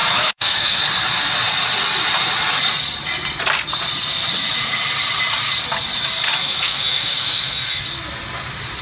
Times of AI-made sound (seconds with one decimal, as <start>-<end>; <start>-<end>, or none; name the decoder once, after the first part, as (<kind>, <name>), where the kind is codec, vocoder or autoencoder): 0.0-0.8 (autoencoder, DAC-VAE); 6.4-7.8

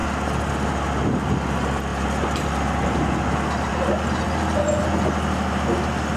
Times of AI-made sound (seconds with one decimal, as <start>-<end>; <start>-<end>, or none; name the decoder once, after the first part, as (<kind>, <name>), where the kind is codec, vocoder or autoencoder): none

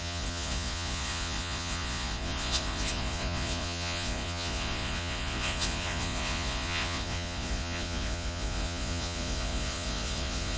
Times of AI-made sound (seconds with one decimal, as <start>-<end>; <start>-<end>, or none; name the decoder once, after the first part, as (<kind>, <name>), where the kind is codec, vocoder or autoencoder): 0.0-10.6 (vocoder, Vocos)